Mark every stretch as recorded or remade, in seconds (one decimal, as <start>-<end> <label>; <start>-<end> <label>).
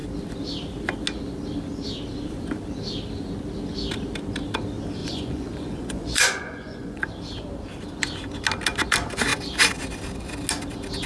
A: 0.0-5.0 recorded; 5.0-7.0 remade; 7.0-11.1 recorded